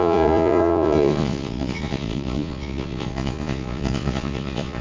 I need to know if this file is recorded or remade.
remade